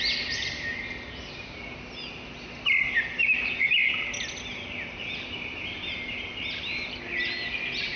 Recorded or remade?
recorded